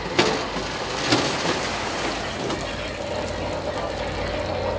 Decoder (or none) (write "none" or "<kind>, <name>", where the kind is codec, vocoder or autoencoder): none